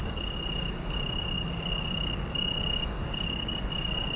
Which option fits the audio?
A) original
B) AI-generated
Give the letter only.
B